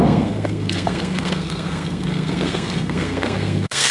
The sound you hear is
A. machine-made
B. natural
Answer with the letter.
A